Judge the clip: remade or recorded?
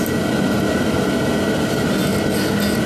recorded